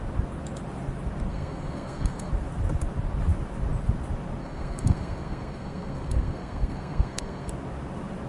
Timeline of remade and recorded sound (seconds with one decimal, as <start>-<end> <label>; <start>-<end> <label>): 0.0-1.3 recorded; 1.3-2.3 remade; 2.3-4.4 recorded; 4.4-7.5 remade; 7.5-8.3 recorded